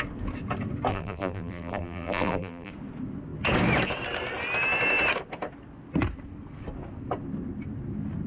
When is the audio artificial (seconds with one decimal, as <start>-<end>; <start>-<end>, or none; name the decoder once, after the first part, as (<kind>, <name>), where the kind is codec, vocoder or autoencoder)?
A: 0.9-2.7 (vocoder, BigVGAN v2)